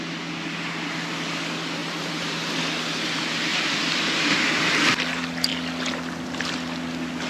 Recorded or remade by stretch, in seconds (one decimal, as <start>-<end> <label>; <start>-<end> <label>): 0.0-1.8 recorded; 1.8-2.4 remade; 2.4-7.3 recorded